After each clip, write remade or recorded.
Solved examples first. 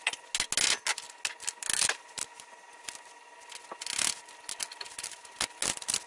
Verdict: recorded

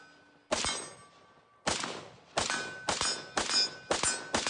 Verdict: recorded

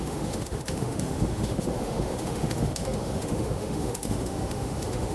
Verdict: remade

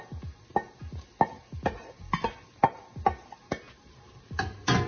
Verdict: recorded